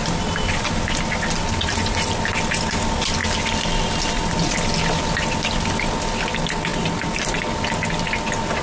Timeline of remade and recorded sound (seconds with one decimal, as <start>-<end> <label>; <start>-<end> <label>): 0.0-8.6 recorded